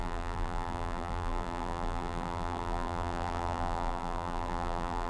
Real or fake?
fake